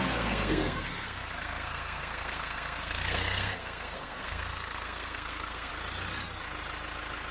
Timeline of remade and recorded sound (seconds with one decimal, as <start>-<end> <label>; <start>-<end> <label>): 0.0-5.7 remade; 5.7-7.3 recorded